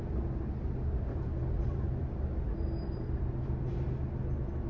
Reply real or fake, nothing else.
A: real